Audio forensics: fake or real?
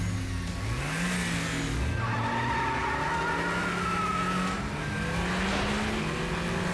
real